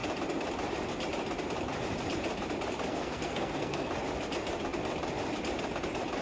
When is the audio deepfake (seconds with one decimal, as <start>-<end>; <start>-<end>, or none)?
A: 2.9-3.9